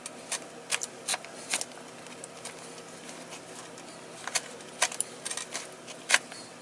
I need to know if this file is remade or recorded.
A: recorded